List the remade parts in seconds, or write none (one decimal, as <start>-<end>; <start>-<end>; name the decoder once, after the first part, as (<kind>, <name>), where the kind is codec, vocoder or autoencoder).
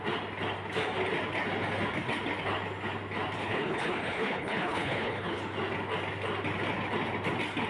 3.4-5.4 (codec, HILCodec)